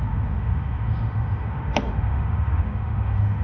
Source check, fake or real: fake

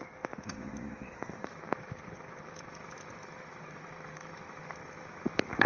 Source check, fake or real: fake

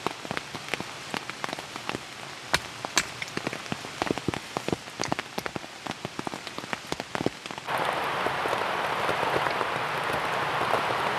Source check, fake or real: real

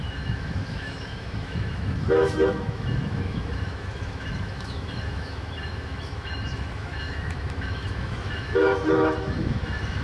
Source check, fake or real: fake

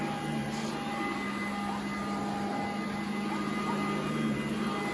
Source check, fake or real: real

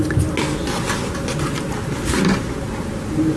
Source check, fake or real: real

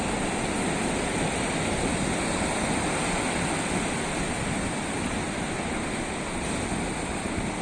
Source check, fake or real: real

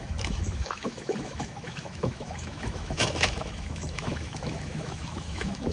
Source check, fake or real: fake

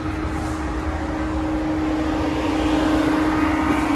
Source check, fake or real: real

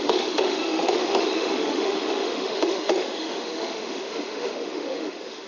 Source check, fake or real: fake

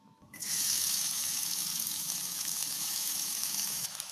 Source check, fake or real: fake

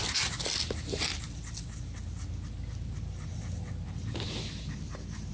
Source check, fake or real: real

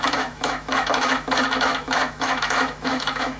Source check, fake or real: fake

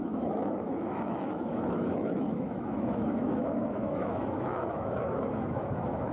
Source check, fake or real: fake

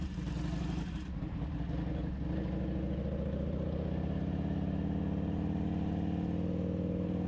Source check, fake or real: real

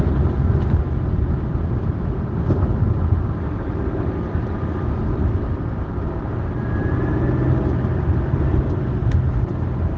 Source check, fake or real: real